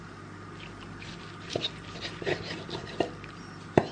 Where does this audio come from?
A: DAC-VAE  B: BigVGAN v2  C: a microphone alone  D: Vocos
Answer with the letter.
C